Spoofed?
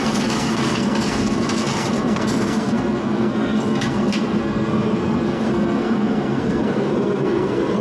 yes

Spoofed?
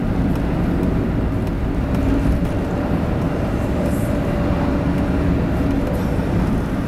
no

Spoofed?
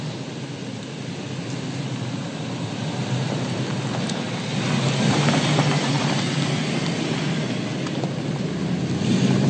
no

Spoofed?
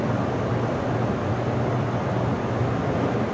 no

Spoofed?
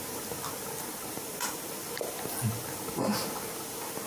no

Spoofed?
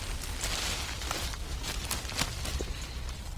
no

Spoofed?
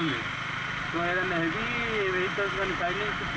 no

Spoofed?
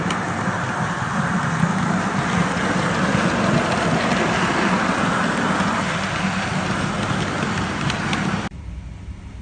no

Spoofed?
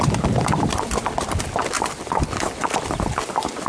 no